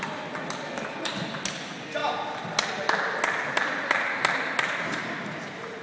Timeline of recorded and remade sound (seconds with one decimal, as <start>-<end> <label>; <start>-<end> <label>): 0.0-5.8 recorded